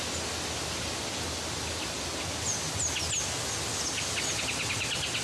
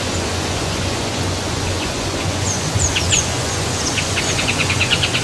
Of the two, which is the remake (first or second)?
second